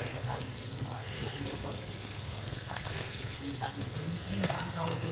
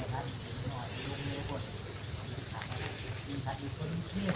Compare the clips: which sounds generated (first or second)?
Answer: first